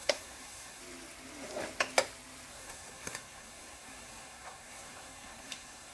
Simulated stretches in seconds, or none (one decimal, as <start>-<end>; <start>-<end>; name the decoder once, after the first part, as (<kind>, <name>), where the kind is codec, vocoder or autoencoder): 0.0-0.8 (codec, SNAC); 2.5-5.9